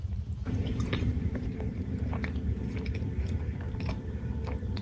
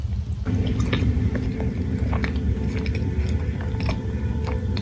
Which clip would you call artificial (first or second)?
first